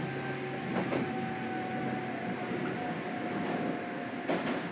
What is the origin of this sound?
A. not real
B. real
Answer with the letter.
B